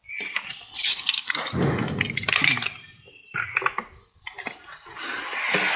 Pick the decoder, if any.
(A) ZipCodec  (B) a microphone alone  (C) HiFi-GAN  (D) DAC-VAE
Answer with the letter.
B